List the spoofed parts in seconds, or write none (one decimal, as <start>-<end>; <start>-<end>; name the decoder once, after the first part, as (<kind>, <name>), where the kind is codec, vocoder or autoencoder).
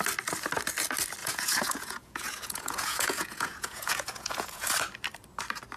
1.2-4.7 (vocoder, Vocos)